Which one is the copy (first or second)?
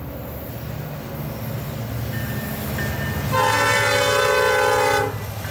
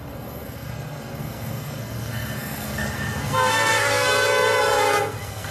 second